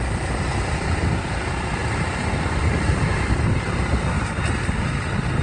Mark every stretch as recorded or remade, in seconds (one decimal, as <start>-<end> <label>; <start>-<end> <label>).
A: 0.0-5.4 recorded

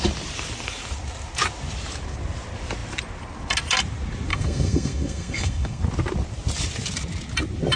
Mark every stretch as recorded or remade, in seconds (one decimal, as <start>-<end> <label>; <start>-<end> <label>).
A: 0.0-4.3 recorded; 4.3-5.8 remade; 5.8-7.8 recorded

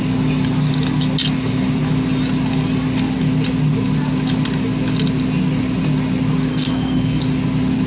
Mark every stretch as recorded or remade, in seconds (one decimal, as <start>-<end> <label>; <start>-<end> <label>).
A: 0.0-6.5 recorded; 6.5-7.2 remade; 7.2-7.9 recorded

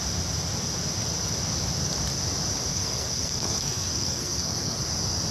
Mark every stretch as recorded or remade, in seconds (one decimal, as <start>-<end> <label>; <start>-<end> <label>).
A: 0.0-2.7 recorded; 2.7-4.8 remade; 4.8-5.3 recorded